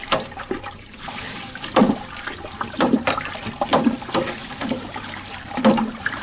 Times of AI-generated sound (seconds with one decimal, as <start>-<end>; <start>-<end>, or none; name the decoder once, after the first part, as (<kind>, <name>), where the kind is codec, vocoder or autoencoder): 0.0-1.8 (vocoder, BigVGAN v2); 2.6-6.2